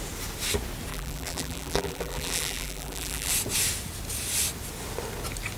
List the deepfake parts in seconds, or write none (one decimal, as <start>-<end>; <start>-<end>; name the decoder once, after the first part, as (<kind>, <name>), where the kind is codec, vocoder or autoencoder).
0.9-3.3 (vocoder, BigVGAN v2)